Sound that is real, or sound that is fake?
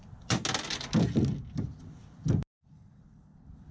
real